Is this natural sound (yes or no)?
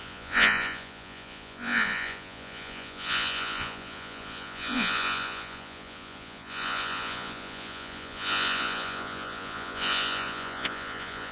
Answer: no